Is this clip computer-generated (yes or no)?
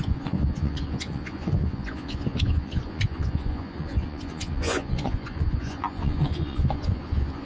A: yes